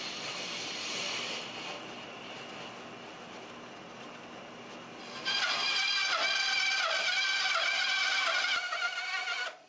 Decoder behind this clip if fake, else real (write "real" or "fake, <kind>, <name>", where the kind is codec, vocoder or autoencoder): real